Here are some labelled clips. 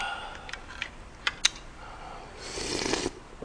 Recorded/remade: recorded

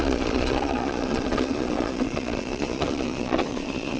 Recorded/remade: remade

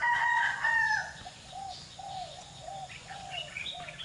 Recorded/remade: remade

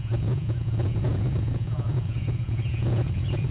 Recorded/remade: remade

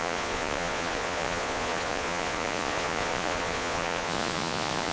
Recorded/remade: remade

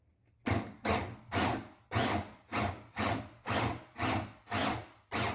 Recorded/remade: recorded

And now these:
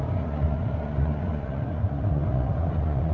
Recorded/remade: remade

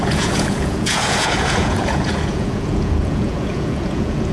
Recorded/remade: remade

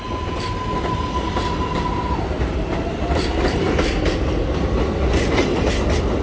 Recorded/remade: recorded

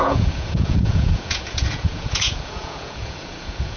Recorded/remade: remade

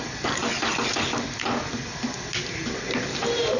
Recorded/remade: recorded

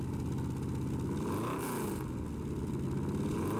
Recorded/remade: recorded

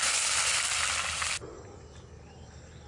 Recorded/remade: recorded